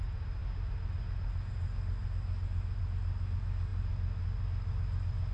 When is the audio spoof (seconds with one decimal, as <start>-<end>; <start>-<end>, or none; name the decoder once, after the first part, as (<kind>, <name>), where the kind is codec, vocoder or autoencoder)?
none